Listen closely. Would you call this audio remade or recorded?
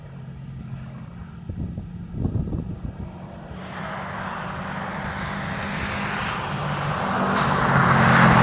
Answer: recorded